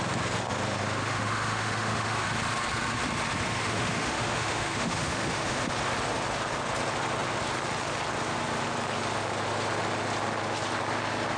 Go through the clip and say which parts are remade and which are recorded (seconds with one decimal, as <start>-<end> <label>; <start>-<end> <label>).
0.0-1.1 recorded; 1.1-2.3 remade; 2.3-3.6 recorded; 3.6-5.7 remade; 5.7-11.4 recorded